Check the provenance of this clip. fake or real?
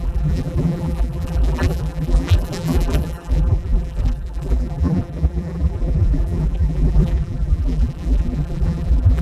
fake